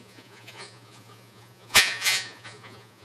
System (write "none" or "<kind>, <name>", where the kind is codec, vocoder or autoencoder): vocoder, Vocos